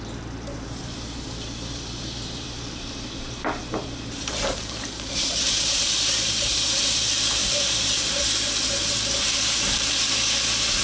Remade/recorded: remade